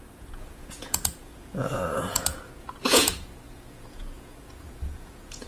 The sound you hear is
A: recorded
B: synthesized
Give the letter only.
B